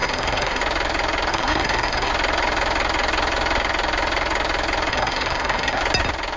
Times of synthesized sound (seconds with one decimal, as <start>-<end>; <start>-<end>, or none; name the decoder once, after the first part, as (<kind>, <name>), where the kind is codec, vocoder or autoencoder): 0.0-0.6 (codec, SNAC); 1.3-2.1; 4.9-5.8